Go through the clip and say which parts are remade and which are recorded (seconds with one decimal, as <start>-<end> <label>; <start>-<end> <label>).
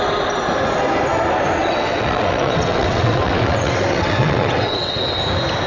0.0-1.6 recorded; 1.6-5.0 remade; 5.0-5.7 recorded